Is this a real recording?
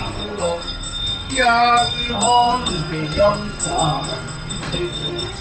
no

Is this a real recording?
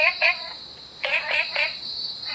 no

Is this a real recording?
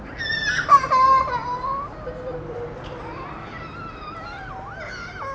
yes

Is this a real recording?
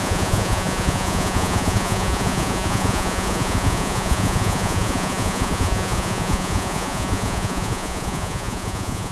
no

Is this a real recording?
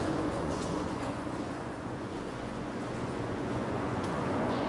no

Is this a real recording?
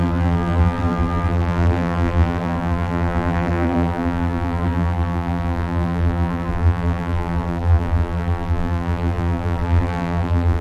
no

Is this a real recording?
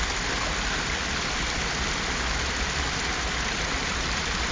yes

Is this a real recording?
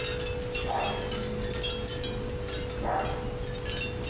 yes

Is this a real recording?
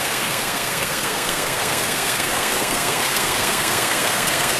no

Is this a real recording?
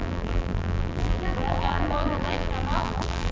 no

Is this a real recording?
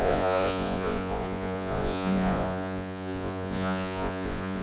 no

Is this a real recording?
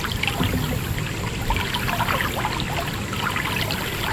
yes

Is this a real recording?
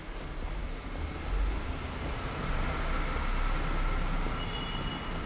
yes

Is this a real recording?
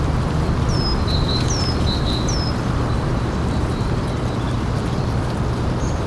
yes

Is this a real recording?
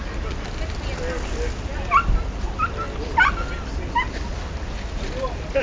yes